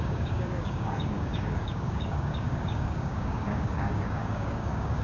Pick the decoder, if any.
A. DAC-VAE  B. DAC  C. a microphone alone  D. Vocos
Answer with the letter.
B